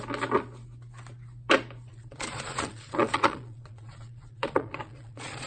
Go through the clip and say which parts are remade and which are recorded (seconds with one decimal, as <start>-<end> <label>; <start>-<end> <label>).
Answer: 0.0-1.9 recorded; 1.9-5.5 remade